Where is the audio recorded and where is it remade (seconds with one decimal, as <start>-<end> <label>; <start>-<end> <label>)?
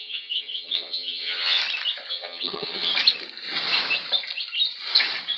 0.0-1.6 remade; 1.6-2.1 recorded; 2.1-2.9 remade; 2.9-5.4 recorded